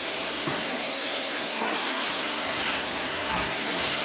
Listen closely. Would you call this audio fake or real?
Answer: fake